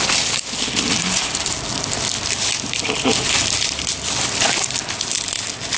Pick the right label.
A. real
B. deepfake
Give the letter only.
A